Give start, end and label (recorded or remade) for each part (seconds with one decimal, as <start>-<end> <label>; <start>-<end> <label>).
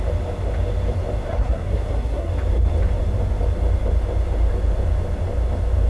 0.0-1.3 recorded; 1.3-2.3 remade; 2.3-5.9 recorded